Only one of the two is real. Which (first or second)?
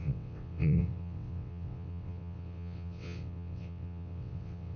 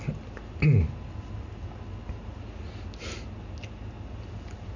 second